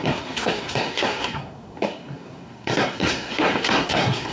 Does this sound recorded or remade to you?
remade